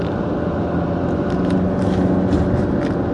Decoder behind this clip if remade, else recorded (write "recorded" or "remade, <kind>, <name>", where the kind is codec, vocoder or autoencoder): recorded